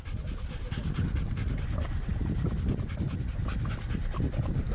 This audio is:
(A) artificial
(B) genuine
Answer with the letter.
B